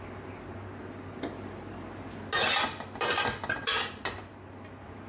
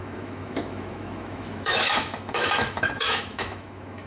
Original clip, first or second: first